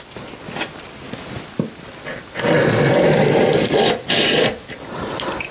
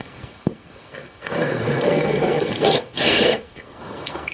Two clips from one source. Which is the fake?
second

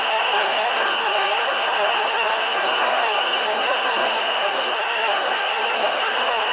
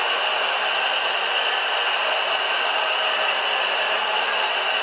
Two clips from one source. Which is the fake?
first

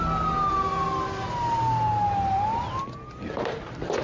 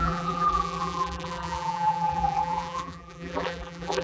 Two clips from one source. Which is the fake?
second